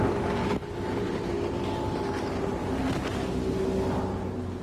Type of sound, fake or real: real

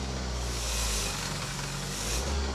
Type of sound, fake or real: fake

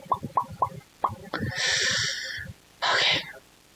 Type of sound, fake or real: real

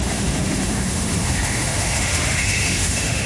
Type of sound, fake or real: fake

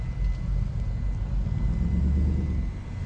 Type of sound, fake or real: real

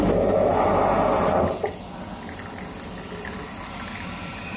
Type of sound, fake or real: real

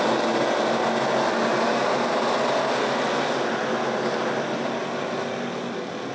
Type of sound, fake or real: real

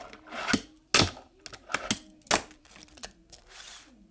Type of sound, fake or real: real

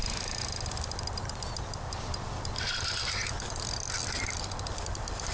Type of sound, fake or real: real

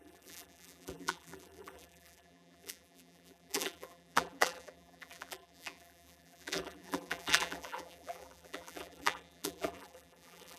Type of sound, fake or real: fake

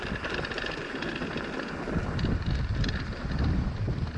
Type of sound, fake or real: real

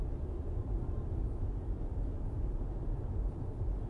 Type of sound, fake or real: real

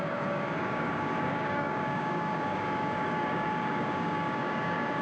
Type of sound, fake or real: fake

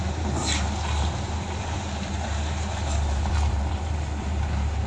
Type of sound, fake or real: fake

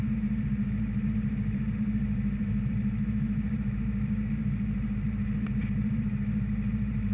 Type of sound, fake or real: fake